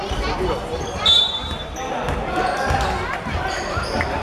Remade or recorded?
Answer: recorded